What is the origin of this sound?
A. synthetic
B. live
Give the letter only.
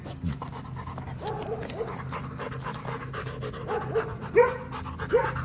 B